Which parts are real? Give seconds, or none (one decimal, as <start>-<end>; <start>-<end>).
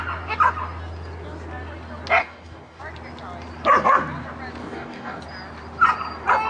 0.0-2.2; 2.8-4.6; 5.2-6.5